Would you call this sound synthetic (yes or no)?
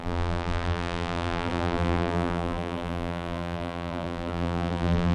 yes